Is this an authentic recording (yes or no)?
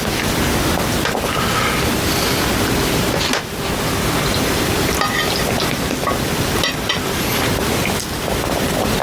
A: yes